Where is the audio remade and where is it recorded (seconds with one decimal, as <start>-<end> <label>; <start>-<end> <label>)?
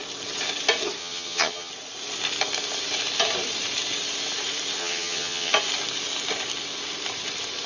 0.0-1.0 recorded; 1.0-1.7 remade; 1.7-4.8 recorded; 4.8-5.5 remade; 5.5-7.7 recorded